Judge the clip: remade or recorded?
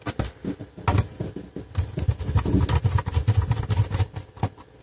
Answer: recorded